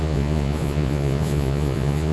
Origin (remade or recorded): remade